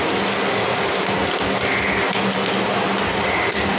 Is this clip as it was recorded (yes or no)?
yes